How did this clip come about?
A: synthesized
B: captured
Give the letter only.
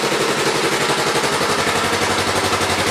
B